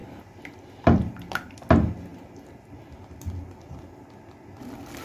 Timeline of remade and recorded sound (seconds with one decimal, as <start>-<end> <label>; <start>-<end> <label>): 0.0-1.6 remade; 1.6-2.1 recorded; 2.1-3.7 remade; 3.7-5.0 recorded